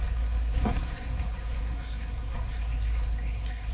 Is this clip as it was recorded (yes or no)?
no